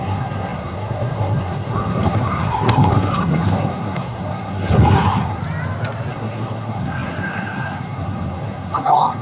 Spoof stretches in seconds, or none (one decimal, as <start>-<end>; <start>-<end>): 0.0-5.4; 6.1-9.2